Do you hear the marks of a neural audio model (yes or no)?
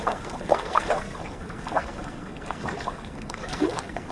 yes